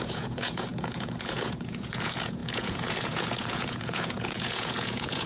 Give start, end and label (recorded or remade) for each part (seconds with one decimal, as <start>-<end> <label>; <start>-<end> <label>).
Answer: 0.0-5.3 remade